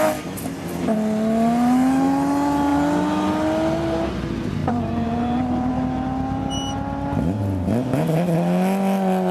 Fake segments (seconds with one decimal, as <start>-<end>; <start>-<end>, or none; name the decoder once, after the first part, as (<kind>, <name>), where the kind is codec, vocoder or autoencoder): 4.6-5.7 (vocoder, BigVGAN v2)